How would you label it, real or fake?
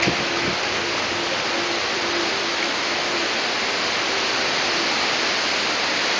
real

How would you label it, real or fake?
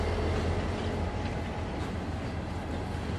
real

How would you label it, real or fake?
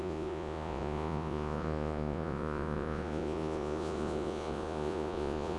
fake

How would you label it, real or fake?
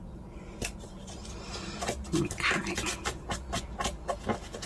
real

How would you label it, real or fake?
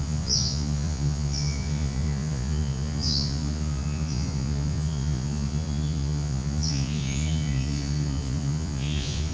fake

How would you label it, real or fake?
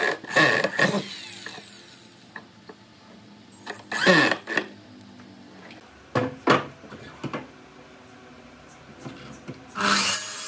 real